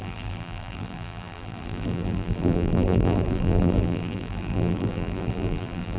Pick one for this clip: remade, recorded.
remade